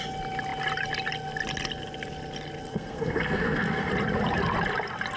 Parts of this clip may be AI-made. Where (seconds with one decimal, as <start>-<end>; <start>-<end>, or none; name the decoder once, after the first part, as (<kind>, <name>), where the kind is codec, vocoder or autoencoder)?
2.7-3.9 (codec, SNAC)